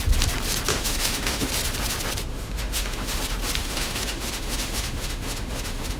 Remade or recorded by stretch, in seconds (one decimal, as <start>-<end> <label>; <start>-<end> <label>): 0.0-0.7 recorded; 0.7-1.5 remade; 1.5-2.3 recorded; 2.3-3.2 remade; 3.2-3.6 recorded; 3.6-6.0 remade